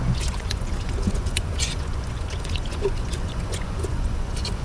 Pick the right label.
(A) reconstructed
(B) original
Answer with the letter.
A